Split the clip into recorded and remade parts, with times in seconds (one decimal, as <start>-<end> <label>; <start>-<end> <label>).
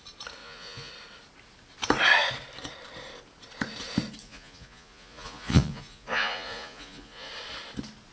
0.0-0.4 recorded; 0.4-0.9 remade; 0.9-4.2 recorded; 4.2-7.3 remade; 7.3-8.1 recorded